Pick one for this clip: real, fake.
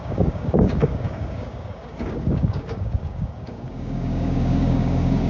fake